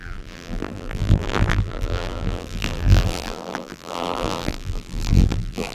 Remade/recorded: remade